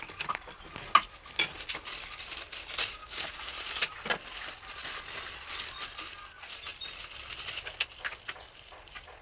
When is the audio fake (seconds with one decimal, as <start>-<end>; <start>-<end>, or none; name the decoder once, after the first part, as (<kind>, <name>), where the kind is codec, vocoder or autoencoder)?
3.0-3.5 (codec, DAC)